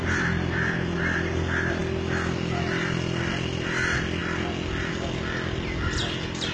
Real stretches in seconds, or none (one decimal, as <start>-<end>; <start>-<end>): 0.0-6.5